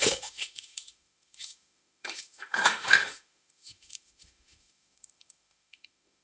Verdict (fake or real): fake